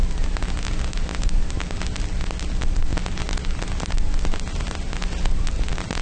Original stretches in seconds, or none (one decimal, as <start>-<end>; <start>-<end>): 0.0-6.0